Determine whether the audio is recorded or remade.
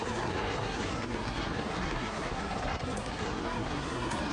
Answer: remade